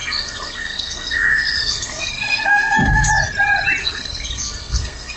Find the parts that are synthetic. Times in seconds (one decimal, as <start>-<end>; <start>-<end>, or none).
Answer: 0.0-3.1; 3.8-5.2